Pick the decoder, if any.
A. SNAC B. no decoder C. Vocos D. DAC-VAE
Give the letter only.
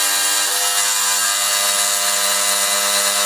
B